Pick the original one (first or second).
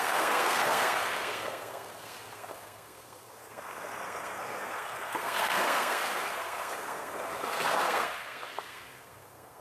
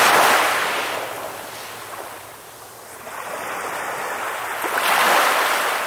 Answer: second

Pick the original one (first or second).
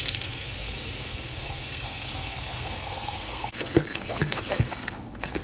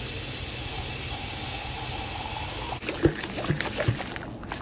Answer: second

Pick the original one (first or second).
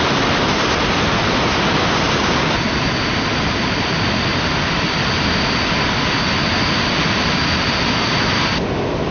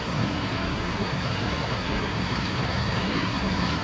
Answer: first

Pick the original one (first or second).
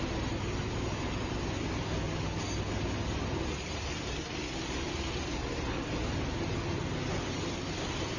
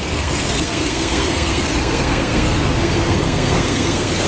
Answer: first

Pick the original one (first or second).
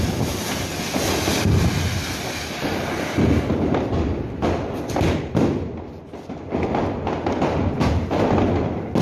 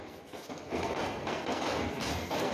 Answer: first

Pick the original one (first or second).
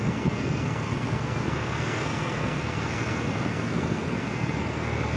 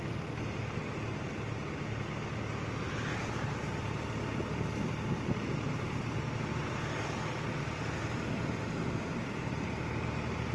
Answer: second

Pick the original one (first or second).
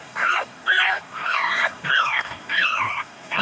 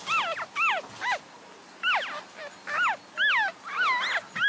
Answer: second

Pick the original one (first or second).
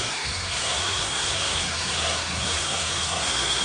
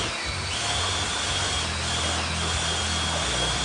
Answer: second